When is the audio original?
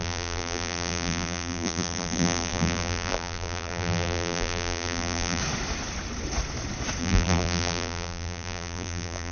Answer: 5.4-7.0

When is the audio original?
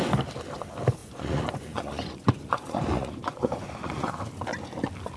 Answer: 0.0-1.0; 4.1-5.2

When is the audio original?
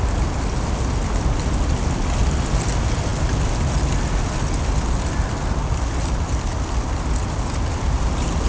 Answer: 0.0-8.5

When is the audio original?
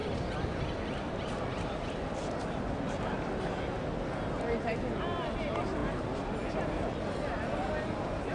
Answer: 3.1-8.3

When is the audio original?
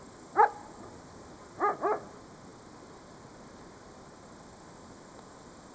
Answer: 0.0-5.7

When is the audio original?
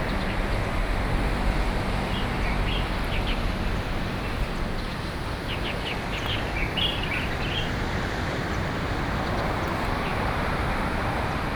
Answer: 0.0-6.9; 8.9-11.6